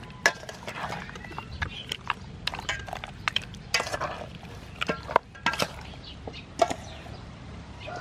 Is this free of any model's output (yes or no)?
yes